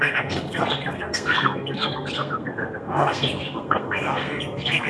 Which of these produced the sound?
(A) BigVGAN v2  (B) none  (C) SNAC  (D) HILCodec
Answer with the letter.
C